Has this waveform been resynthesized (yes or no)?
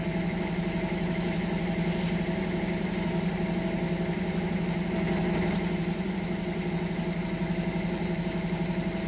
no